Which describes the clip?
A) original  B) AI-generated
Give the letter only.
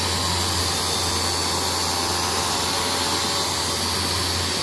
A